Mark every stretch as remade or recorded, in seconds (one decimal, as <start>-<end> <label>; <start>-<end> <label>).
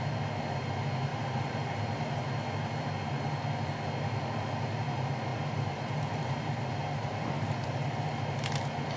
0.0-1.1 recorded; 1.1-1.8 remade; 1.8-5.3 recorded; 5.3-8.1 remade; 8.1-9.0 recorded